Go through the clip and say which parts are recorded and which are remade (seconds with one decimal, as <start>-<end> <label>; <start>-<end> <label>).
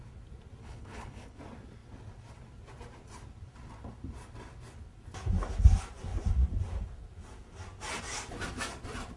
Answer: 0.0-0.6 recorded; 0.6-1.4 remade; 1.4-9.2 recorded